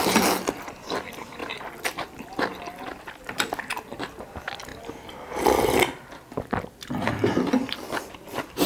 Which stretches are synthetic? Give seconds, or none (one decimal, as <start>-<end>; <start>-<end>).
none